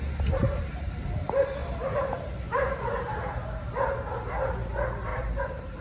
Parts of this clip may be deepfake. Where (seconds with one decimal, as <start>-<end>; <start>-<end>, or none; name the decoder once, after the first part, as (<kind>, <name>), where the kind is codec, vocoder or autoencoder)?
1.6-3.2 (vocoder, BigVGAN v2); 5.1-5.8